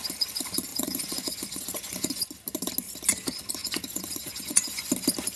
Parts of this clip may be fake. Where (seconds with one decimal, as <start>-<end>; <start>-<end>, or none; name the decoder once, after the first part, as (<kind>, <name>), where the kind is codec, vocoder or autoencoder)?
0.7-2.2 (vocoder, Vocos); 3.6-4.9